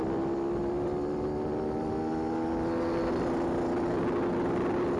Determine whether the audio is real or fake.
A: real